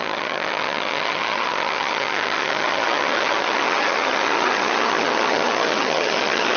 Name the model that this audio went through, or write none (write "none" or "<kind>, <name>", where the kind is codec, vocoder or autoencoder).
vocoder, HiFi-GAN